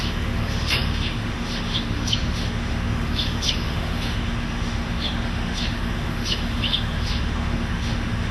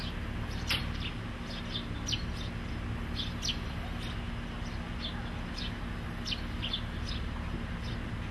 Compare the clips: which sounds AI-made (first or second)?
first